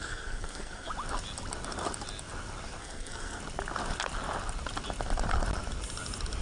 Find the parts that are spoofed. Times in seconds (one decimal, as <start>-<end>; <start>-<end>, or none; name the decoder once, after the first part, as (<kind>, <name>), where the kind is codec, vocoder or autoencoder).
0.0-0.9 (codec, SNAC); 2.8-3.4